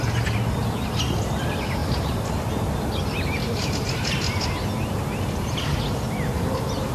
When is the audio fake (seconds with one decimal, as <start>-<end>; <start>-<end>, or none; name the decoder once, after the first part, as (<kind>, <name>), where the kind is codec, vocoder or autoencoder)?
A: none